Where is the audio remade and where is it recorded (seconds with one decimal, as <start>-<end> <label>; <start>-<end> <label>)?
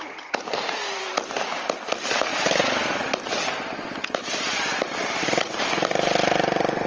0.0-1.1 remade; 1.1-2.3 recorded; 2.3-5.6 remade; 5.6-6.9 recorded